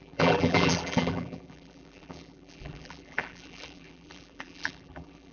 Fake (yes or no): yes